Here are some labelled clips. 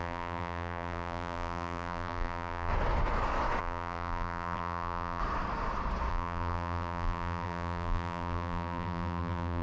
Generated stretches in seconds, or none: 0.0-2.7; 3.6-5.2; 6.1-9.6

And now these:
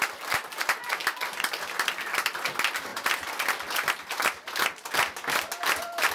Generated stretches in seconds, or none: none

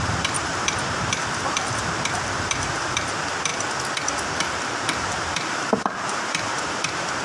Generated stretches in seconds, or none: 0.0-3.5; 4.2-7.2

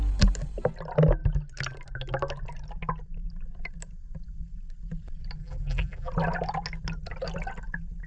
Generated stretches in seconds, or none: 5.4-6.1